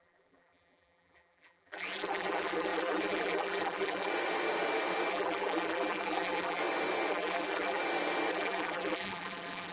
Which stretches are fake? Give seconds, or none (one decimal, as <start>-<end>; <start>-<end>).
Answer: 0.0-4.1; 5.1-6.6; 7.1-7.8; 8.3-9.7